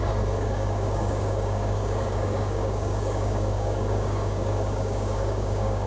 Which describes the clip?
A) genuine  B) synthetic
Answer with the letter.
B